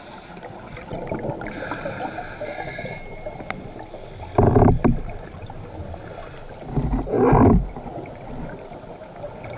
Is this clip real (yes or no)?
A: yes